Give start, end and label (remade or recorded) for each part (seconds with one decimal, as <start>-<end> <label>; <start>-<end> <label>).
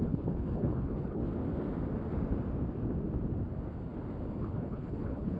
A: 0.0-1.2 remade; 1.2-4.4 recorded; 4.4-5.4 remade